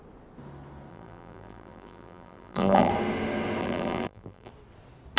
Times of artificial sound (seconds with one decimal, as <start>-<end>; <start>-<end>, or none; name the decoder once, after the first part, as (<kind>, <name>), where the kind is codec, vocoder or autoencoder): 0.9-2.9 (vocoder, BigVGAN v2); 3.6-4.5